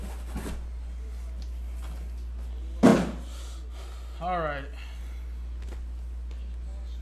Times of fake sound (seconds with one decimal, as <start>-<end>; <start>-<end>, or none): none